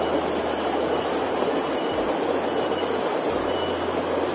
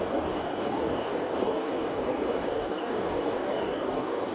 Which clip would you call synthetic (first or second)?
second